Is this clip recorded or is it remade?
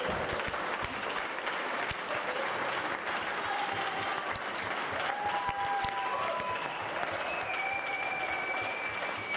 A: recorded